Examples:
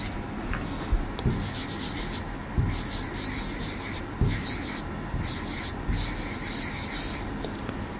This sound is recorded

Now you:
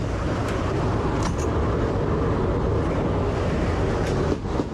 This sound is remade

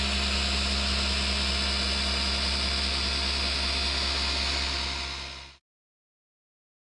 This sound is recorded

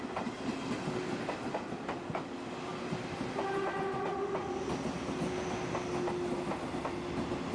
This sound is recorded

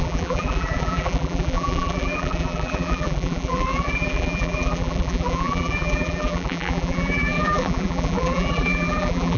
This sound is remade